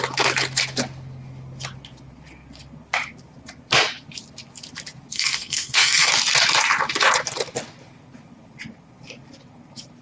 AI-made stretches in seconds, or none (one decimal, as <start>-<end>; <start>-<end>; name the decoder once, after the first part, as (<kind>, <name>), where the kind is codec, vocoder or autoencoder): 5.1-6.1 (codec, SNAC)